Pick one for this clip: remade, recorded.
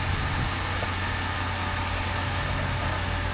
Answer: recorded